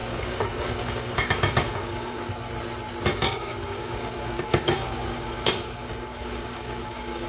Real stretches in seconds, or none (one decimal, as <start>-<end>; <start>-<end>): 2.3-3.1